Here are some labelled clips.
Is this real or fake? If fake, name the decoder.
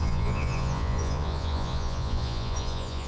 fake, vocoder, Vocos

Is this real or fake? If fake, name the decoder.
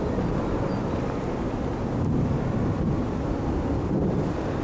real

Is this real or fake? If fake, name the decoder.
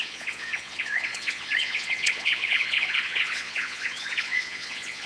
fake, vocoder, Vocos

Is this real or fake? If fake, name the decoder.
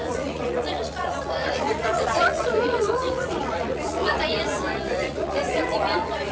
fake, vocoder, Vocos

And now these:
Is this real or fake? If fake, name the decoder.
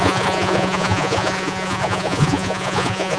fake, vocoder, Vocos